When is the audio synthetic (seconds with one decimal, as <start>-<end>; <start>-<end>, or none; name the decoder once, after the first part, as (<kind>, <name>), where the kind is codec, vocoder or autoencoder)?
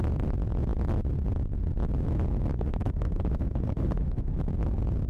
2.5-4.3 (autoencoder, DAC-VAE)